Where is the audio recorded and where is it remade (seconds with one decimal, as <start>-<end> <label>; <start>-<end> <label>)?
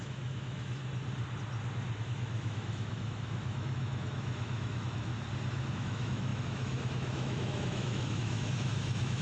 0.0-0.8 remade; 0.8-2.0 recorded; 2.0-5.1 remade; 5.1-5.7 recorded; 5.7-9.2 remade